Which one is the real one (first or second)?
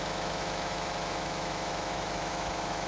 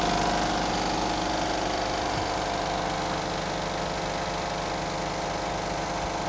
second